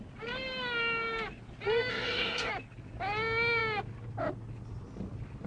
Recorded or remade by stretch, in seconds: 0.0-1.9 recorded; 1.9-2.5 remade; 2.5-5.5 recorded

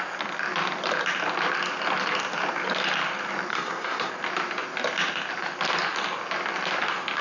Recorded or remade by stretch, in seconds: 0.0-3.5 recorded; 3.5-4.1 remade; 4.1-7.2 recorded